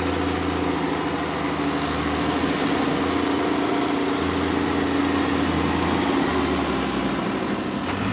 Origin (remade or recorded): recorded